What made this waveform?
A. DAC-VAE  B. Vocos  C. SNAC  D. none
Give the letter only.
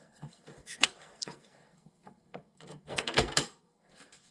C